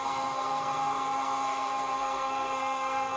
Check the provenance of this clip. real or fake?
fake